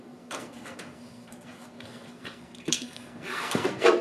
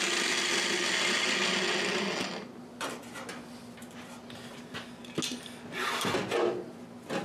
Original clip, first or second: second